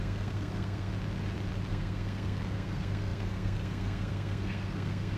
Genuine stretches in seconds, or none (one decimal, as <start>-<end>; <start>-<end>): 0.9-1.7